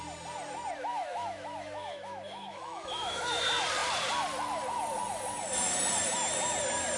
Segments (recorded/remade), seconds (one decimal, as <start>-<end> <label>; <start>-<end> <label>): 0.0-0.9 recorded; 0.9-3.4 remade; 3.4-7.0 recorded